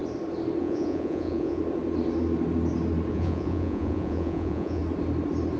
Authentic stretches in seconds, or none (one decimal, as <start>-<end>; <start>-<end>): 0.0-0.6; 1.6-3.1; 4.8-5.6